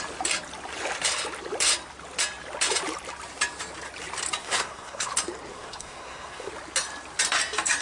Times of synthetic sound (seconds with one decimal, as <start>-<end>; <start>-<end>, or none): 4.4-5.1; 5.5-6.5